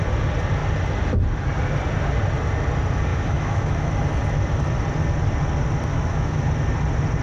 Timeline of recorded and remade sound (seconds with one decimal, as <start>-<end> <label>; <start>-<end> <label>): 0.0-3.1 recorded; 3.1-3.9 remade; 3.9-5.9 recorded; 5.9-6.4 remade; 6.4-7.2 recorded